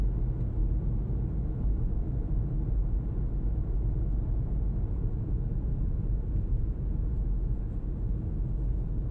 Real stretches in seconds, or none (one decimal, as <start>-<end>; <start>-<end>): 0.0-3.6; 7.6-9.1